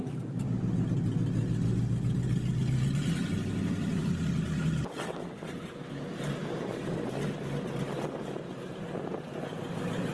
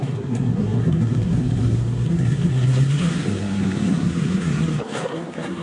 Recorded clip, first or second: first